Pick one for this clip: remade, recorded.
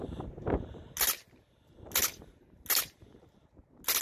recorded